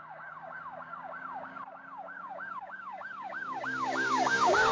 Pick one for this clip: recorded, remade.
remade